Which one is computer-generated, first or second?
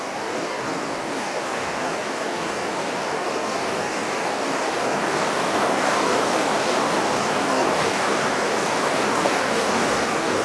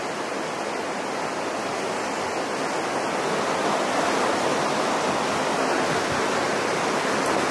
first